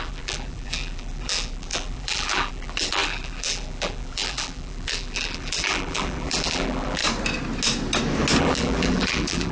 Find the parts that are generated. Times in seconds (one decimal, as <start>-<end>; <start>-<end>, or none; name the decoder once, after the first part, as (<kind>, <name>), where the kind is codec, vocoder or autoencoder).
0.0-7.0 (vocoder, BigVGAN v2); 8.4-9.5

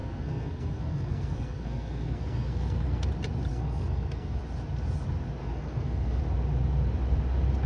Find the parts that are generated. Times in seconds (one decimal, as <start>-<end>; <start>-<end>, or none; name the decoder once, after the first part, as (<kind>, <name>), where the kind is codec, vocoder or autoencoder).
0.0-3.1 (codec, SNAC); 3.5-4.4; 5.4-6.2

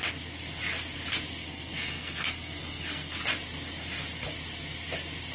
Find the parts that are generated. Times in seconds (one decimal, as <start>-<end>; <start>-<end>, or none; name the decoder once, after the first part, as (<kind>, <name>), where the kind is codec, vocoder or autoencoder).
1.4-3.2 (codec, SNAC)

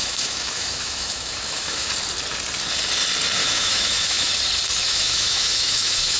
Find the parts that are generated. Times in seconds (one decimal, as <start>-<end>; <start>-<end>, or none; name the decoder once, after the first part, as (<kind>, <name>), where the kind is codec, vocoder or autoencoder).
0.0-1.9 (autoencoder, DAC-VAE); 3.4-4.3; 4.8-6.2

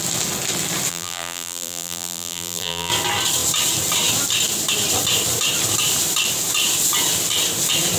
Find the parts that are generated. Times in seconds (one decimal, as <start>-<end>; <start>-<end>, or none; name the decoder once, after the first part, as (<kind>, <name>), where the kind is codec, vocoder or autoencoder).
0.9-2.9 (vocoder, BigVGAN v2)

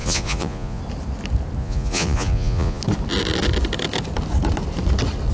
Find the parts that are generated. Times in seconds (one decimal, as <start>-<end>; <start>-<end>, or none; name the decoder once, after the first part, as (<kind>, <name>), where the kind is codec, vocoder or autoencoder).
0.0-0.8 (vocoder, Vocos); 1.6-2.8